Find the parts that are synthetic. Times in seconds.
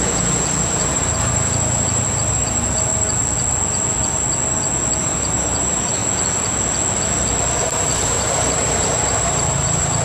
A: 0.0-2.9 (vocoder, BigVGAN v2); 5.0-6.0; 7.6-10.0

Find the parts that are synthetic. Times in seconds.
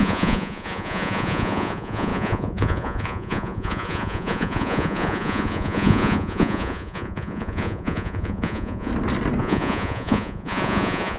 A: 0.0-8.9 (vocoder, Vocos); 9.4-11.2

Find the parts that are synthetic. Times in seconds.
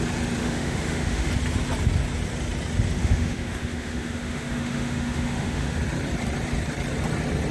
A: 0.4-1.3 (autoencoder, DAC-VAE); 3.0-5.8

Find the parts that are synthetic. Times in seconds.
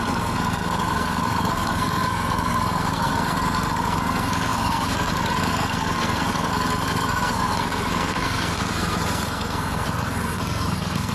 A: 0.0-11.1 (codec, SNAC)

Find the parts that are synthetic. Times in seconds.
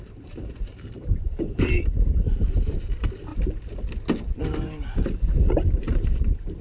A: 0.0-3.3 (vocoder, BigVGAN v2); 5.5-6.6